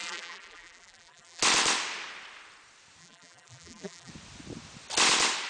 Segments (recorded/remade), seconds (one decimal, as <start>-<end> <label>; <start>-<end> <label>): 0.0-1.4 remade; 1.4-3.0 recorded; 3.0-4.1 remade; 4.1-5.5 recorded